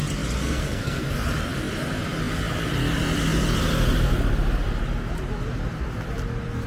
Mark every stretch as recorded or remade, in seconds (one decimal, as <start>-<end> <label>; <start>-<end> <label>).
0.0-0.4 recorded; 0.4-1.1 remade; 1.1-6.7 recorded